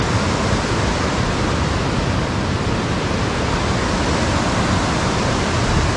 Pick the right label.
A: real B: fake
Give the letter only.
A